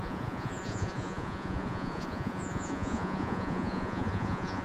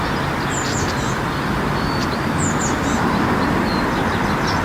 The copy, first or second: first